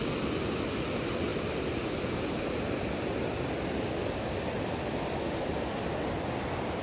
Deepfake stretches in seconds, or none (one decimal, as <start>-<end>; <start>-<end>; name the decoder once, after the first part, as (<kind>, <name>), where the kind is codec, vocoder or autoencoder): none